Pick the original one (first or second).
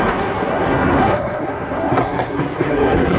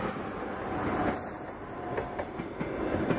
second